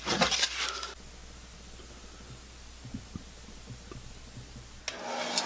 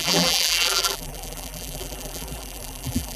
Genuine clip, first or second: first